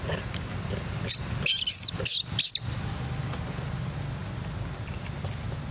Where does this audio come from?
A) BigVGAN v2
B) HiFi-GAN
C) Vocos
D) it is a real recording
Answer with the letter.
D